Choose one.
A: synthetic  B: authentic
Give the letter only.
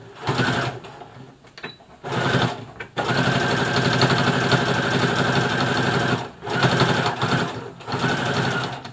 B